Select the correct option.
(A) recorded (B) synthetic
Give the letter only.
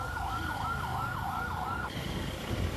B